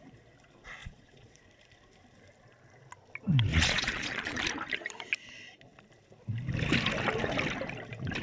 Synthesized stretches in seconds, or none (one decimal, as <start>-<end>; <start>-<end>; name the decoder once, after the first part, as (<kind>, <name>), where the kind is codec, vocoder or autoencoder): 0.8-1.4 (vocoder, Vocos); 3.5-4.4